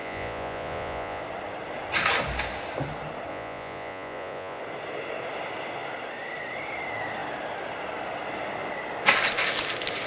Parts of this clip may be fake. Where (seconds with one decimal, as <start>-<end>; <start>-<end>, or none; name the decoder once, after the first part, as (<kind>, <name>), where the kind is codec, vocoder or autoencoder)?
0.0-1.2 (vocoder, Vocos); 3.3-4.6